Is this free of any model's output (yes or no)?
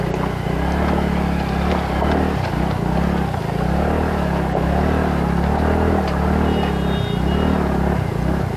yes